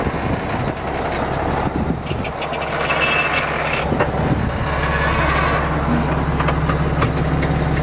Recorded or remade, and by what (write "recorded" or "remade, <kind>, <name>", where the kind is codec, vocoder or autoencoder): recorded